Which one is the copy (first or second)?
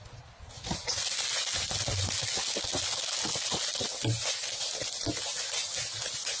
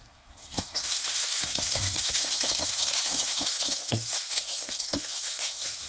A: second